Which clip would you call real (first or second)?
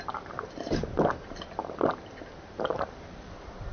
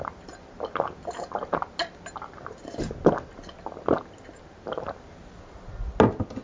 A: second